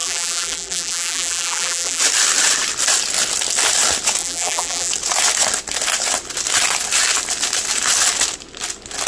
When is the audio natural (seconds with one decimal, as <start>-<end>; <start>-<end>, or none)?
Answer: 2.0-4.2; 4.9-9.1

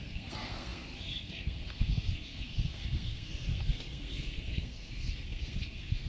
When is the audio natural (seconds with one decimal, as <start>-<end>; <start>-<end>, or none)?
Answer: none

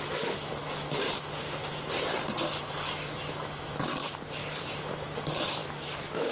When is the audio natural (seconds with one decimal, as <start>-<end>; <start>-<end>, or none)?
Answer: 0.6-2.5; 3.9-4.6

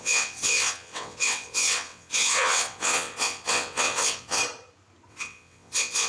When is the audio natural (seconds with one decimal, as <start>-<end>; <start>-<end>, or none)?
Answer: 4.4-5.1

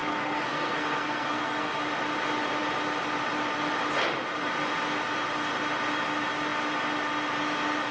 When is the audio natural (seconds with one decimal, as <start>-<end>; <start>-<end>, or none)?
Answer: 1.8-7.9

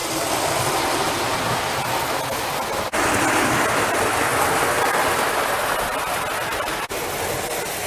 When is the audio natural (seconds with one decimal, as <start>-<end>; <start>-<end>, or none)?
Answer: 0.0-7.9

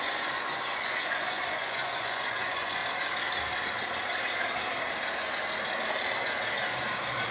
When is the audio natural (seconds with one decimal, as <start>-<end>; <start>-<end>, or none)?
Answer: 2.8-7.3

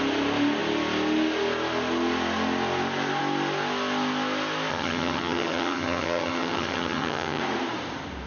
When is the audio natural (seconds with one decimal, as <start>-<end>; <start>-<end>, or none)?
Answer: 0.0-4.7; 7.4-8.3